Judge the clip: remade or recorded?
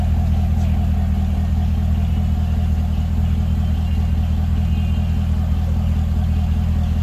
recorded